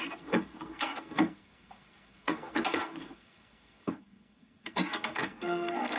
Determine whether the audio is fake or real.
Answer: fake